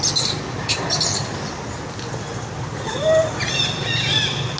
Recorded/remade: recorded